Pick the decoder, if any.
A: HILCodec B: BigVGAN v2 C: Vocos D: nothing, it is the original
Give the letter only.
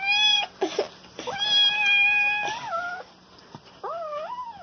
D